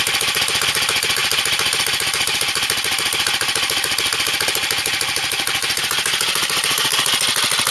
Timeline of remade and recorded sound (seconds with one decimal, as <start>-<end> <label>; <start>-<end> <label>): 0.0-7.7 recorded